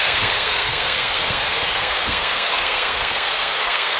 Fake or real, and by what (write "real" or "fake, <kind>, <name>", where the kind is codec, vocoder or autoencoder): fake, codec, SNAC